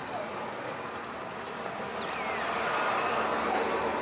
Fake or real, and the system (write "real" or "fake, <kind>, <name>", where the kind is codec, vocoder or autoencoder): real